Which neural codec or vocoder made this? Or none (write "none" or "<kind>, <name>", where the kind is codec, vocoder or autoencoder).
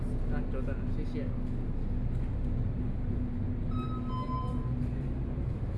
none